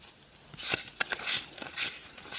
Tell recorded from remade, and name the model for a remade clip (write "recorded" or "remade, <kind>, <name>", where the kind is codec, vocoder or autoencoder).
recorded